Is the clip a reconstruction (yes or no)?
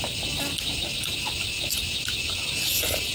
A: no